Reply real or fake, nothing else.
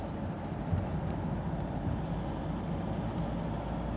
real